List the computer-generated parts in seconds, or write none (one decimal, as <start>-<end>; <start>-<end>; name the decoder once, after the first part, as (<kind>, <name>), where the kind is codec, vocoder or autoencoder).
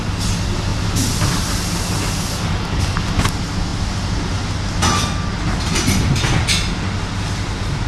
none